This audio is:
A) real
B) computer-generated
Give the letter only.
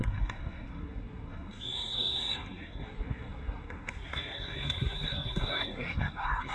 B